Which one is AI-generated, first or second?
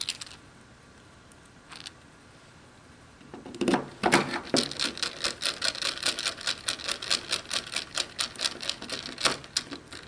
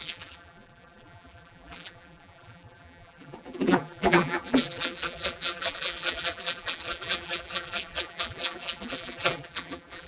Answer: second